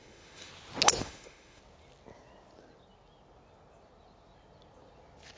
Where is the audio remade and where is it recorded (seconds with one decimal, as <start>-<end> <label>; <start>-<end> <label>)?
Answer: 0.0-0.5 remade; 0.5-1.0 recorded; 1.0-1.6 remade; 1.6-5.4 recorded